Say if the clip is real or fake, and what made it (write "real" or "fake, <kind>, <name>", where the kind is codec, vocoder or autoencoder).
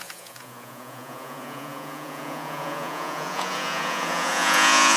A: fake, vocoder, Vocos